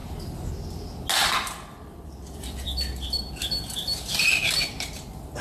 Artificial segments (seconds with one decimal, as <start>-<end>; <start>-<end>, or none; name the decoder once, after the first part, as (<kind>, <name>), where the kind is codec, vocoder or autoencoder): 0.0-0.5 (vocoder, BigVGAN v2); 1.2-4.4